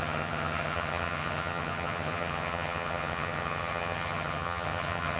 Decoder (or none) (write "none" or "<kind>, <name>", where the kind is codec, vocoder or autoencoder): vocoder, HiFi-GAN